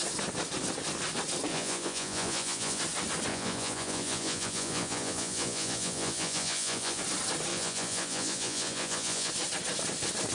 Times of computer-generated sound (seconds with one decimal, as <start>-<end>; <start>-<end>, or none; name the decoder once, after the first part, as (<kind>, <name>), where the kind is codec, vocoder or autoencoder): 1.5-2.8 (vocoder, Vocos); 3.3-7.0; 7.5-9.3